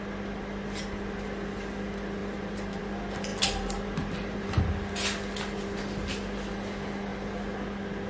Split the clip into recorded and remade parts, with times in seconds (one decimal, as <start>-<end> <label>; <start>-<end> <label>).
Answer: 0.0-2.2 recorded; 2.2-2.8 remade; 2.8-3.3 recorded; 3.3-4.6 remade; 4.6-8.1 recorded